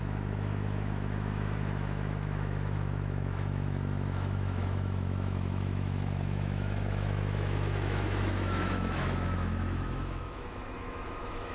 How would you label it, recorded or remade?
remade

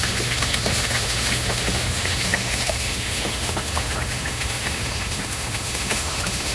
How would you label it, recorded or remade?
remade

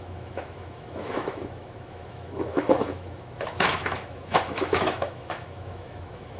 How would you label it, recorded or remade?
remade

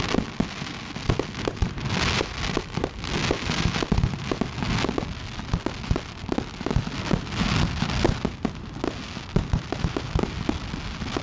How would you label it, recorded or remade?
recorded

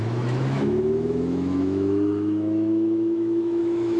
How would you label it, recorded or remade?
remade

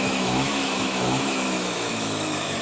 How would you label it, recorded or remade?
remade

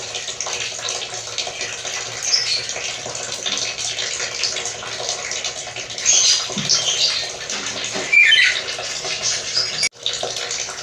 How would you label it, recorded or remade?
recorded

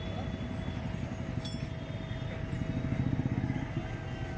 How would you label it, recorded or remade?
recorded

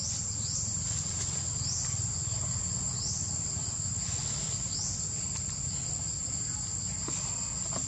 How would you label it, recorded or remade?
recorded